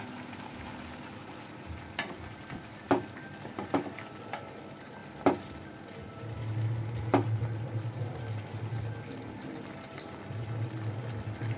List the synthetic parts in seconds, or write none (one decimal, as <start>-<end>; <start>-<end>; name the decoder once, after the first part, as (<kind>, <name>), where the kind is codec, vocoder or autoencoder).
5.0-6.7 (vocoder, BigVGAN v2)